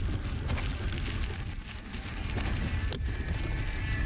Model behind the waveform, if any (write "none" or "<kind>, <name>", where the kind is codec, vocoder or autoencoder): none